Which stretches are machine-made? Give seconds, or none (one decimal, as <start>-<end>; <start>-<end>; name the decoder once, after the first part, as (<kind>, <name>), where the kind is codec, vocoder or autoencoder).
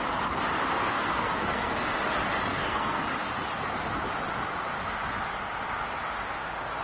0.8-1.9 (codec, SNAC); 2.5-3.0